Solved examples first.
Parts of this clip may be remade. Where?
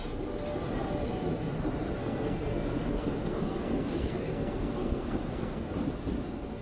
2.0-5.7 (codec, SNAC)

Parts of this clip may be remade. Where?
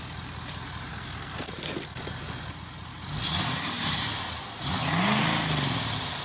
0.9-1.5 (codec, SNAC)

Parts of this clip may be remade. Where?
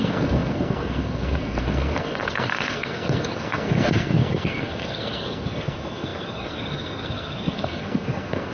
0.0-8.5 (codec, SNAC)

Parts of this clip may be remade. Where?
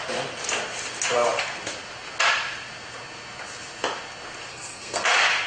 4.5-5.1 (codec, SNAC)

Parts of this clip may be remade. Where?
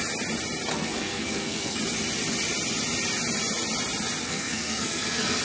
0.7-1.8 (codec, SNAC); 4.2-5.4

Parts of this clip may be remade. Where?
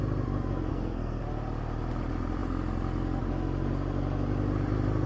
0.7-1.2 (codec, SNAC)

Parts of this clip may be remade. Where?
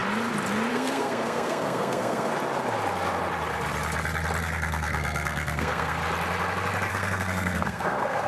0.7-2.3 (codec, SNAC); 4.4-6.0; 6.9-8.3